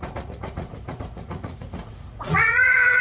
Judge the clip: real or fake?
fake